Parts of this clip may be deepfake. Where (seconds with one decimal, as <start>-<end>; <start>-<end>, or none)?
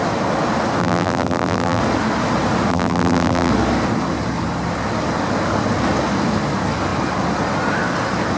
0.8-1.8; 2.7-3.5